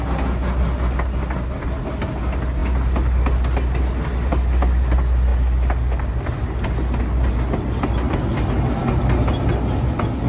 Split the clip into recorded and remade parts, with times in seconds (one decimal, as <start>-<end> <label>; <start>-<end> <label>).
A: 0.0-10.3 recorded